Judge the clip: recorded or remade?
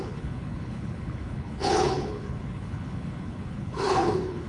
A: remade